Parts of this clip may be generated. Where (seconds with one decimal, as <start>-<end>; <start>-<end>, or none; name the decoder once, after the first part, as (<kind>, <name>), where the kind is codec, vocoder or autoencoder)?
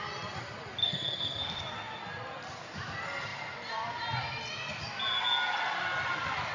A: 0.8-1.6 (codec, SNAC)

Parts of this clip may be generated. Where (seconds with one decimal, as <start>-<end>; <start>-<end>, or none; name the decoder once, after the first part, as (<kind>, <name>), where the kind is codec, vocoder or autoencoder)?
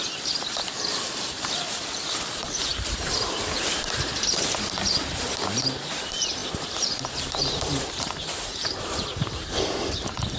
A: 0.0-10.4 (vocoder, BigVGAN v2)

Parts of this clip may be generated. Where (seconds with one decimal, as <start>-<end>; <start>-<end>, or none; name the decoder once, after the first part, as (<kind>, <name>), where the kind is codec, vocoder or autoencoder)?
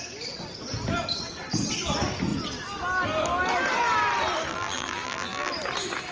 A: 4.5-5.5 (vocoder, BigVGAN v2)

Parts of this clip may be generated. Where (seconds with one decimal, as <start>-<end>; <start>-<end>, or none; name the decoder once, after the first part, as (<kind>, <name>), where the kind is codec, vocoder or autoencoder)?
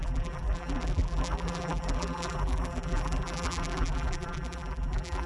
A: 0.0-5.3 (vocoder, BigVGAN v2)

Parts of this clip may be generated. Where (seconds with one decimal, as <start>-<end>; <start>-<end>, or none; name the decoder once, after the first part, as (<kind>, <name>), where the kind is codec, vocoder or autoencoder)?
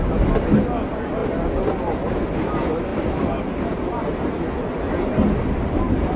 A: 2.9-3.4 (vocoder, BigVGAN v2)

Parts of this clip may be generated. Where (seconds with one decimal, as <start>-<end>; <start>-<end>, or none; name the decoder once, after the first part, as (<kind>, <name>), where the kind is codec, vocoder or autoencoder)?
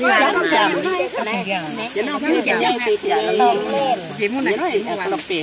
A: none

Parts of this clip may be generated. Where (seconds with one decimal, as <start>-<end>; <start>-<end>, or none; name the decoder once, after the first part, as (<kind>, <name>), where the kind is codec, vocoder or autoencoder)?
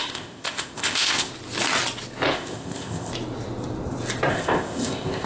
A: 0.0-1.3 (codec, ZipCodec); 2.3-3.1; 4.3-5.3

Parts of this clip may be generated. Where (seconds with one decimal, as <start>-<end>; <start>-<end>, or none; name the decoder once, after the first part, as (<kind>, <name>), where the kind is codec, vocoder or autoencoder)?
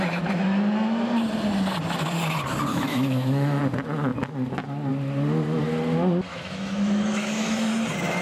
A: 2.7-3.6 (autoencoder, DAC-VAE); 6.3-7.7